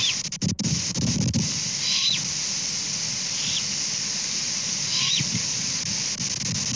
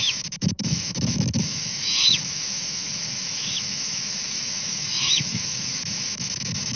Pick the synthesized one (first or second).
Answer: second